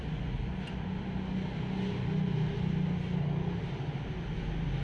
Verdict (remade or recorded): recorded